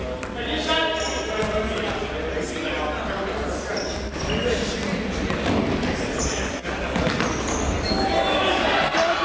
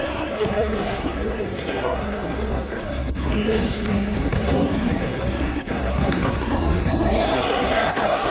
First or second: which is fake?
second